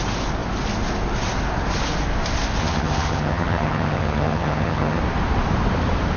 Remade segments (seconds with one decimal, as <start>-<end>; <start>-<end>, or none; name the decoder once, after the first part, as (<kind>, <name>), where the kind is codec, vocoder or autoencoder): 2.6-5.0 (vocoder, HiFi-GAN)